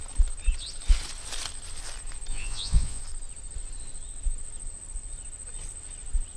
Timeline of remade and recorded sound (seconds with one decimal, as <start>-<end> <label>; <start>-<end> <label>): 0.0-2.3 recorded; 2.3-3.0 remade; 3.0-6.4 recorded